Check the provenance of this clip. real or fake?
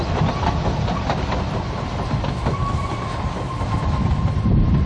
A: real